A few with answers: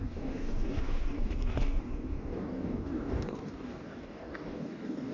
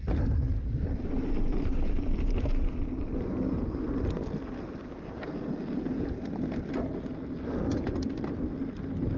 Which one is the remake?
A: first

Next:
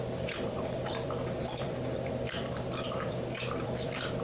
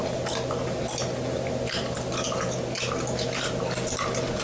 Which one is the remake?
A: first